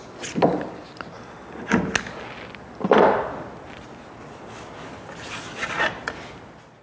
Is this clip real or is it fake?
real